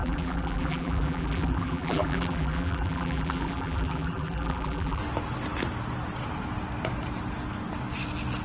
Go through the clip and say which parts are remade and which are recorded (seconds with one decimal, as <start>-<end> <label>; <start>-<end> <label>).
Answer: 0.0-5.0 remade; 5.0-8.4 recorded